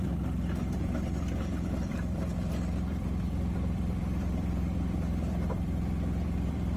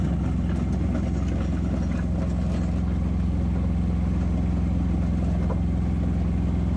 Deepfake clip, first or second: first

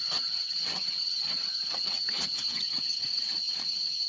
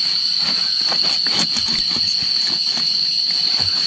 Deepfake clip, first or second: first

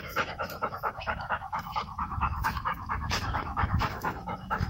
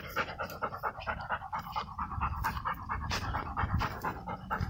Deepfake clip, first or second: first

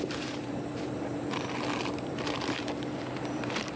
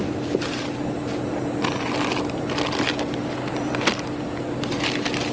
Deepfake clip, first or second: first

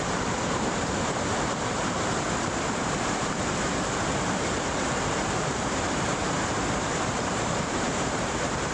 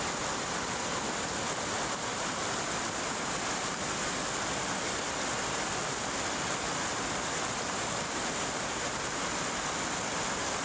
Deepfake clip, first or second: first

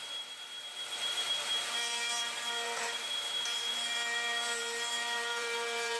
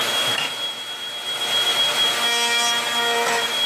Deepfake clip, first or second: first